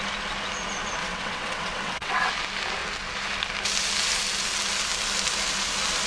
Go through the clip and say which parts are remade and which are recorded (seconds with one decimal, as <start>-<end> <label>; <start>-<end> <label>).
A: 0.0-1.0 recorded; 1.0-2.3 remade; 2.3-6.1 recorded